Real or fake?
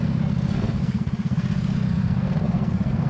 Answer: fake